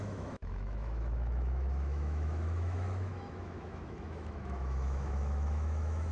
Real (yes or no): no